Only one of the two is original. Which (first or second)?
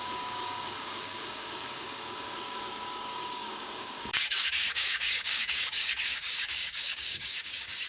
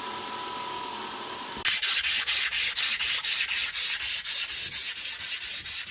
second